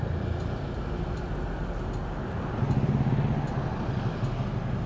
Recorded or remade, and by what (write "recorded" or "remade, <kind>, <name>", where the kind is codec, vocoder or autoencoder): recorded